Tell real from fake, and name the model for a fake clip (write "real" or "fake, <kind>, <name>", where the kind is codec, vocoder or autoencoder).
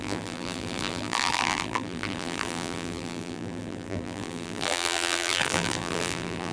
fake, vocoder, BigVGAN v2